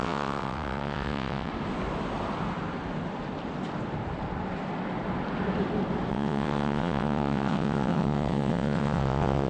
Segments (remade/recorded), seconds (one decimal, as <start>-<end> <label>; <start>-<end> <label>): 0.0-1.5 remade; 1.5-6.1 recorded; 6.1-9.5 remade